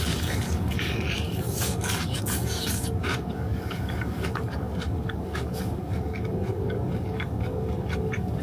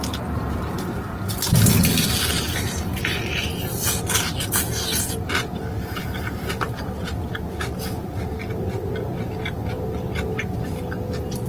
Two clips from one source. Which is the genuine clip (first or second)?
second